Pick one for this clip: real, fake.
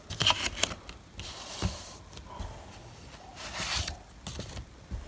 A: real